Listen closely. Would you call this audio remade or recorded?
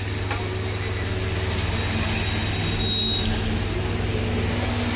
recorded